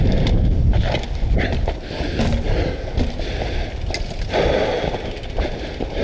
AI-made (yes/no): no